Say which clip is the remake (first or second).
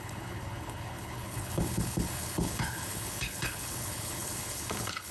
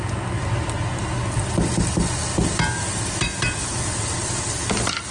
first